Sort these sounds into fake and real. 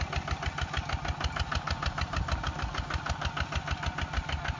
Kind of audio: real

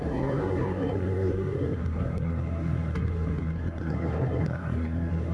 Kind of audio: fake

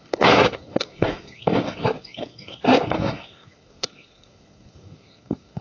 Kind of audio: fake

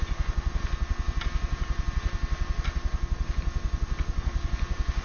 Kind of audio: real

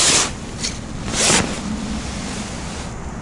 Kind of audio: real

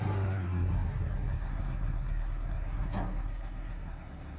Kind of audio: fake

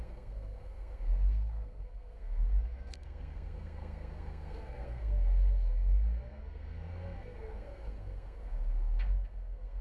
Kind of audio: fake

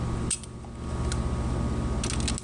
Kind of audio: real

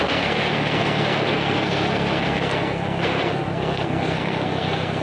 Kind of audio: fake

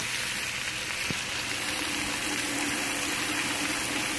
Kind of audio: real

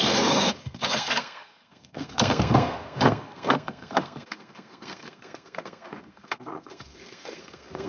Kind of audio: fake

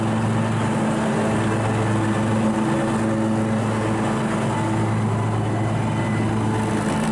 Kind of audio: real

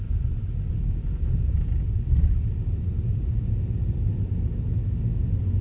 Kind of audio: real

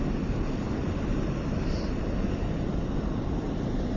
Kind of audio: real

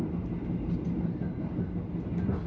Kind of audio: real